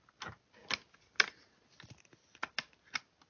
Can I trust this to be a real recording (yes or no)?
yes